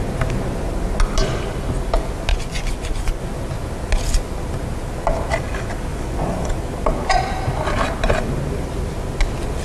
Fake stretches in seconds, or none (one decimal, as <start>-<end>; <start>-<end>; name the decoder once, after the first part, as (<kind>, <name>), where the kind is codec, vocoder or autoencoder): 2.3-3.2 (vocoder, Vocos); 5.9-6.5